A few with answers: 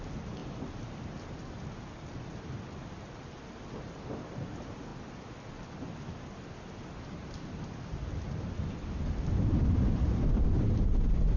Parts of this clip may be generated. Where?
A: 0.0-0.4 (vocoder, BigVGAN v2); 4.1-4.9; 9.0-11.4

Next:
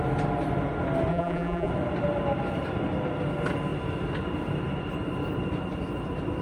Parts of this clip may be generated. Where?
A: 1.1-1.7 (vocoder, BigVGAN v2)